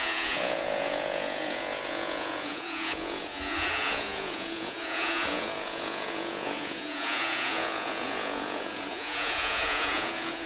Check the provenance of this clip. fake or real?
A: fake